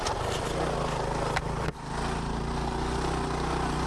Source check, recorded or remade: recorded